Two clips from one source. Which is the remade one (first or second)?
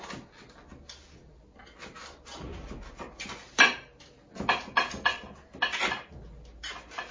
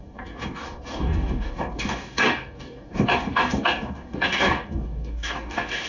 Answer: second